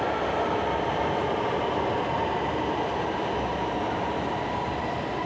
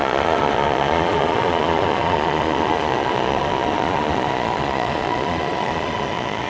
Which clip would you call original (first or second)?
first